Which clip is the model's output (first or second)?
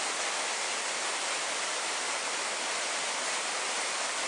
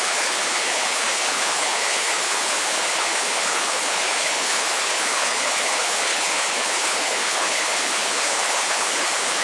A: second